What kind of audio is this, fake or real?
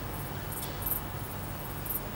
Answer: real